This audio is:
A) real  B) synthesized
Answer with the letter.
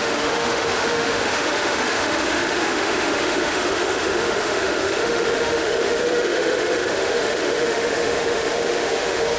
B